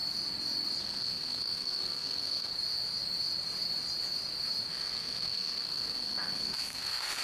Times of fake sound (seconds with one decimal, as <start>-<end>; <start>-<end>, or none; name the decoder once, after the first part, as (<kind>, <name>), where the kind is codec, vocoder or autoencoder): 0.8-2.5 (codec, SNAC); 4.7-7.2